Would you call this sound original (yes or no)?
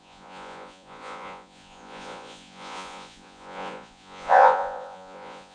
no